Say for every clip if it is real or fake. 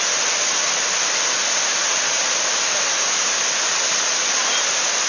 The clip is real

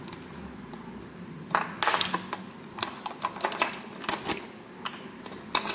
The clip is real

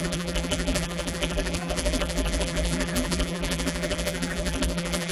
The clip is fake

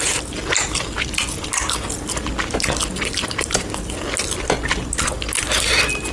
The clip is real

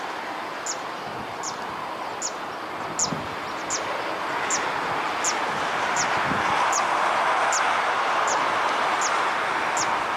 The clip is real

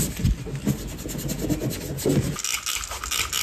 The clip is real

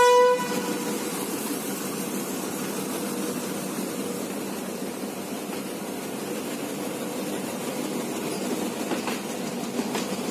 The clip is real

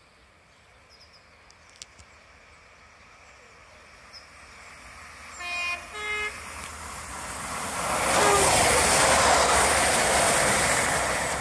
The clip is real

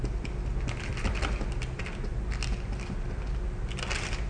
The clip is real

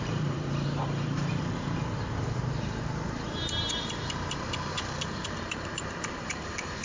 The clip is fake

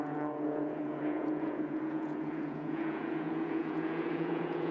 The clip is fake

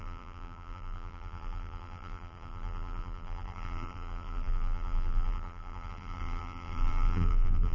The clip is fake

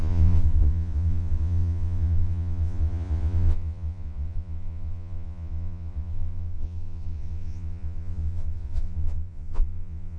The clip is fake